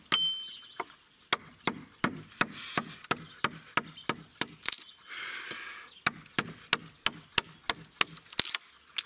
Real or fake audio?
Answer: real